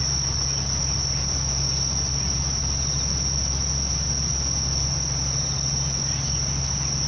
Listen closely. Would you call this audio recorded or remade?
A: recorded